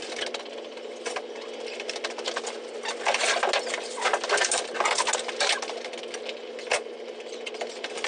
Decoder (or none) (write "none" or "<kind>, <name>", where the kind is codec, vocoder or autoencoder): none